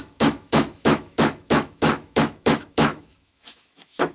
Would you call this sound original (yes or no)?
no